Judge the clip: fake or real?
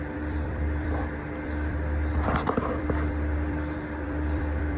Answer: fake